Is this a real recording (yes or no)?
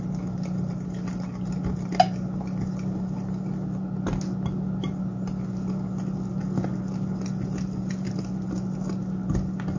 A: yes